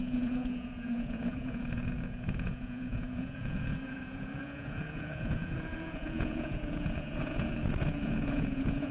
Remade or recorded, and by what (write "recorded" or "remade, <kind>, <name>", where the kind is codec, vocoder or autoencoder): remade, vocoder, Vocos